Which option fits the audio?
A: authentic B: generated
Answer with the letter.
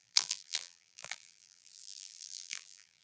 B